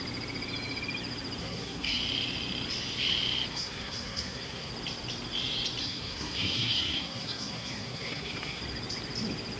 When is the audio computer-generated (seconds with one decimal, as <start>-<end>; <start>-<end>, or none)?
1.4-2.0; 3.5-4.7; 5.8-8.6